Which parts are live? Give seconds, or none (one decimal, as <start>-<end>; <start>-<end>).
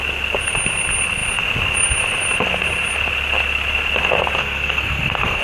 0.0-4.4